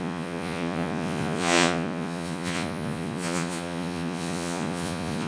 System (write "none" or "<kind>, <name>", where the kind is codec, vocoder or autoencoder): vocoder, Vocos